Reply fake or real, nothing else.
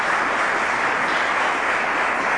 real